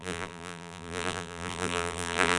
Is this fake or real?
fake